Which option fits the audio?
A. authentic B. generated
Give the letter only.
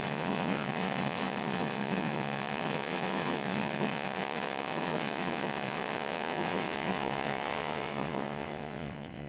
B